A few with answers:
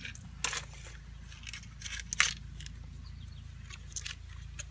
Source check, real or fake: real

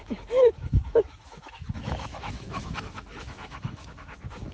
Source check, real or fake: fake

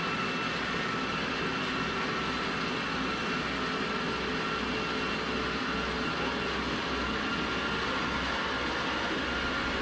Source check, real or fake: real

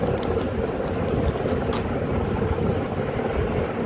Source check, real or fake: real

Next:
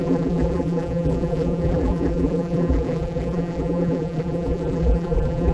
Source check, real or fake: fake